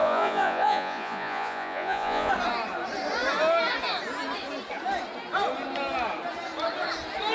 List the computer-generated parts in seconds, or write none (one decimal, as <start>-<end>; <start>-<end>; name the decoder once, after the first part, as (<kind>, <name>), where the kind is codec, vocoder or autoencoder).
0.0-2.3 (vocoder, Vocos)